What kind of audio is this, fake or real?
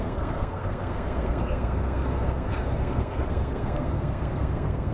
fake